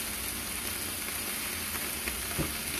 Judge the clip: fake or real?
real